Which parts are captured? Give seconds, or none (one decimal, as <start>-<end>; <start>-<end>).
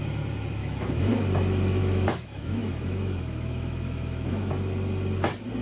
0.0-0.6; 1.1-1.8; 4.5-5.6